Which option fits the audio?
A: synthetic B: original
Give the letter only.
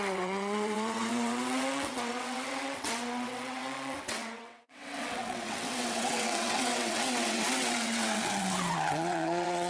A